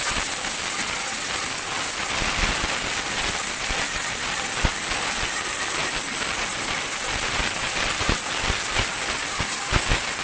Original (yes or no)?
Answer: yes